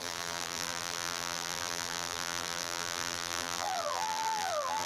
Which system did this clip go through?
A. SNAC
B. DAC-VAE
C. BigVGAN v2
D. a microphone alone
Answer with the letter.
C